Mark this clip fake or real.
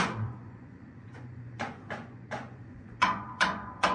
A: fake